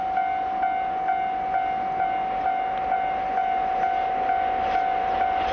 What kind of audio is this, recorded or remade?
recorded